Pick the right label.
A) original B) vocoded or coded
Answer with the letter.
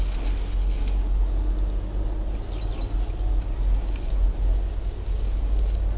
A